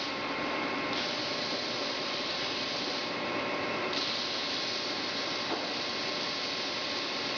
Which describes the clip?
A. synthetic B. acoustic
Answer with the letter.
A